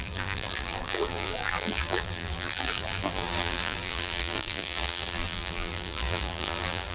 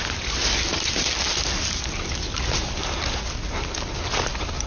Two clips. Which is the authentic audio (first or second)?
second